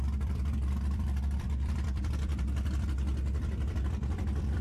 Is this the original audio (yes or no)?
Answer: no